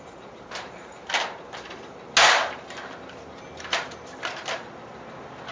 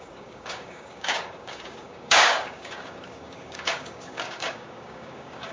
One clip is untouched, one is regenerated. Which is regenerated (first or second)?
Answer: second